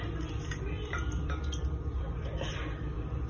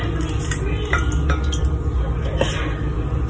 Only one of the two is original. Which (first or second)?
second